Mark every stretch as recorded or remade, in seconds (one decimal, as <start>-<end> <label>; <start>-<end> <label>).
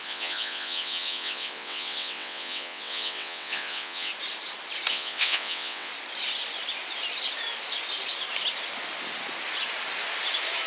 0.0-4.1 remade; 4.1-4.9 recorded; 4.9-5.9 remade; 5.9-10.7 recorded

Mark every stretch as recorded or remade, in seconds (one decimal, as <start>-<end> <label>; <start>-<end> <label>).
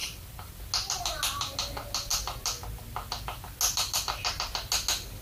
0.0-0.6 remade; 0.6-5.2 recorded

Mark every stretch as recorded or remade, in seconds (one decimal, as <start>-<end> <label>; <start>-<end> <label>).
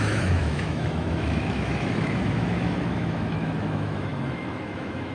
0.0-5.1 remade